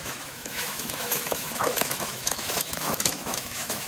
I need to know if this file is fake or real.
fake